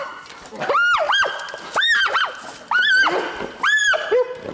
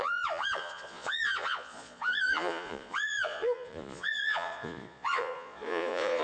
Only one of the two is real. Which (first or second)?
first